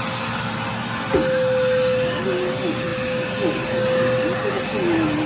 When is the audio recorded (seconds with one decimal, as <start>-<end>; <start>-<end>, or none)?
0.0-5.3